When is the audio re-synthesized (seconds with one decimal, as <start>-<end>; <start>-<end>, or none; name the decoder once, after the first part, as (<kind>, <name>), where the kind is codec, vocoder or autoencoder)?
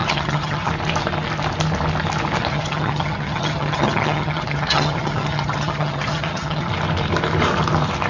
0.0-0.7 (vocoder, HiFi-GAN); 2.5-6.7